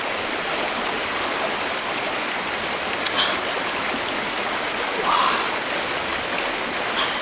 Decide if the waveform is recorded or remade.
remade